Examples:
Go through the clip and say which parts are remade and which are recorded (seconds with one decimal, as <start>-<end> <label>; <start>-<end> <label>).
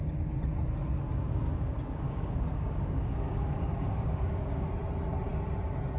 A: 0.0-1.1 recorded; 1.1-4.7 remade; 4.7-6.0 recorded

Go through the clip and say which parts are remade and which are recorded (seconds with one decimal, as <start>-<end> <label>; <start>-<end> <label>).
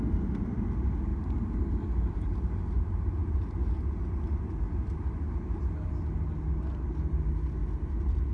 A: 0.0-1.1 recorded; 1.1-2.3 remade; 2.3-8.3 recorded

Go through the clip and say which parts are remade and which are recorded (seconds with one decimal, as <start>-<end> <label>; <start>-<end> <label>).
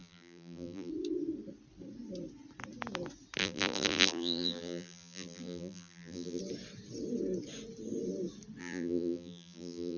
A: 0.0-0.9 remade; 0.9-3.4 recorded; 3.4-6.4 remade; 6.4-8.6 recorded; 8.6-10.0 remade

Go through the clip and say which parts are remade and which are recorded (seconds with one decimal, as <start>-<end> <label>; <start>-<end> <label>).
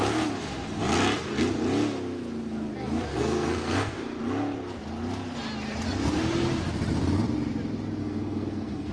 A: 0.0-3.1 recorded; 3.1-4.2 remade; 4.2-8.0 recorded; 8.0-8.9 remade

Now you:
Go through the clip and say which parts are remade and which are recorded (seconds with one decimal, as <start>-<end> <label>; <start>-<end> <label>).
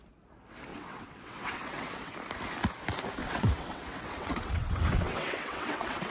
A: 0.0-0.7 recorded; 0.7-2.1 remade; 2.1-3.2 recorded; 3.2-6.1 remade